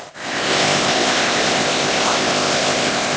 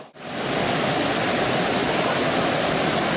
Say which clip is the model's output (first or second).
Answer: first